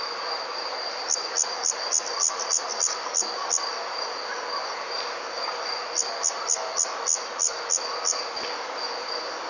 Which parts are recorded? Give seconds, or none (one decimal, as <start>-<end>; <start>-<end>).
0.0-9.5